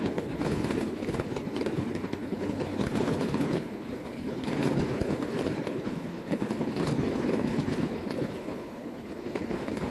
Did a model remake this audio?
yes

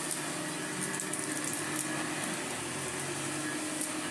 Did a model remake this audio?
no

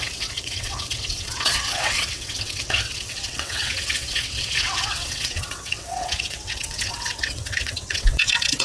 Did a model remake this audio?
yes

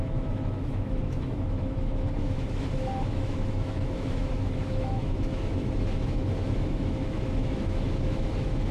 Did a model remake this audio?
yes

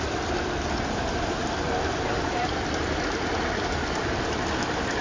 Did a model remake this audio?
no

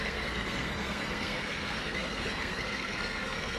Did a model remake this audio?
yes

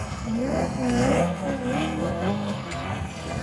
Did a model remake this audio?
yes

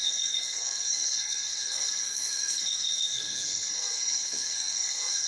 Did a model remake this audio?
yes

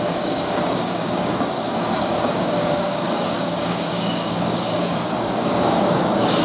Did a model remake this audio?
yes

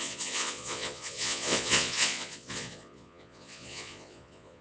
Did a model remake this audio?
yes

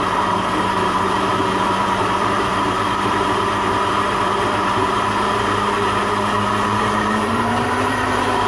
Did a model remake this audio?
yes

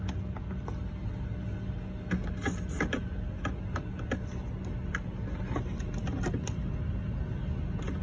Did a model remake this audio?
no